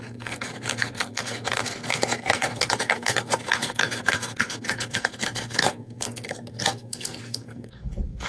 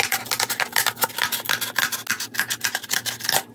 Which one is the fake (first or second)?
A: first